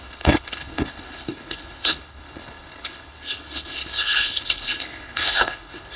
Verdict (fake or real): fake